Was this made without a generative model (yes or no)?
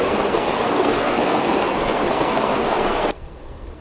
no